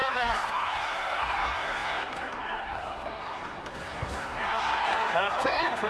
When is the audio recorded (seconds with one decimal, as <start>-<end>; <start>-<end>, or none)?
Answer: none